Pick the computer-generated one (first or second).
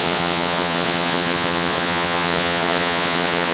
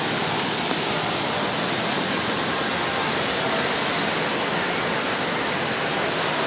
first